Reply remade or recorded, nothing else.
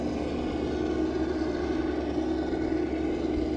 recorded